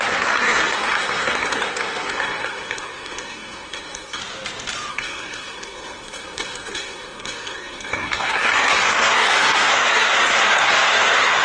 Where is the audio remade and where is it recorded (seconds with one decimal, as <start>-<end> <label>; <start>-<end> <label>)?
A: 0.0-4.2 remade; 4.2-4.9 recorded; 4.9-11.4 remade